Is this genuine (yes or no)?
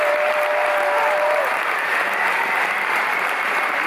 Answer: yes